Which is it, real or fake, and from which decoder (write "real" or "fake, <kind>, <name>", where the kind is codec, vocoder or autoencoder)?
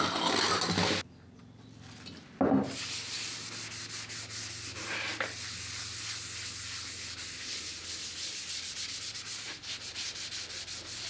real